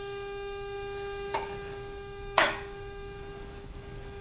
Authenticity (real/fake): fake